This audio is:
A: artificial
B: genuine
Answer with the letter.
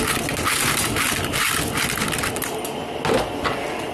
B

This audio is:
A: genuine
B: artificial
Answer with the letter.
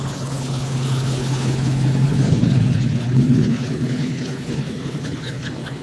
B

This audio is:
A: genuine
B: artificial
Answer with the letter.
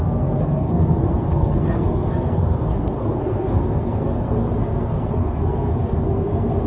B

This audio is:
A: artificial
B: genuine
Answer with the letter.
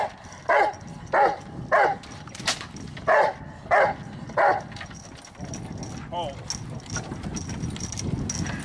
B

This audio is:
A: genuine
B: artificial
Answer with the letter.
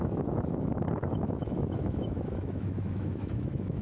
B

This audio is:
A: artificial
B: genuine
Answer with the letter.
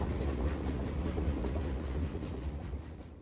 A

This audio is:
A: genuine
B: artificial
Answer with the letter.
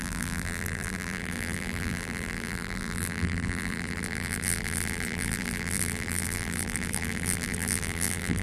B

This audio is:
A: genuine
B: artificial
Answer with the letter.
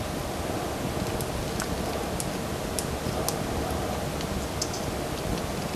A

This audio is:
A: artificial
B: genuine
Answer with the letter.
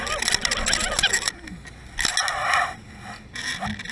B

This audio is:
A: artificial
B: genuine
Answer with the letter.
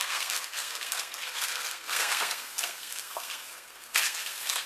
A